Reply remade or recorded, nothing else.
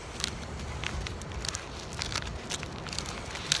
recorded